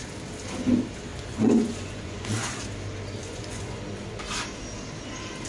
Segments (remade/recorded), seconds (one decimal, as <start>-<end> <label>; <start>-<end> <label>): 0.0-1.1 recorded; 1.1-2.6 remade; 2.6-3.2 recorded; 3.2-3.8 remade; 3.8-5.5 recorded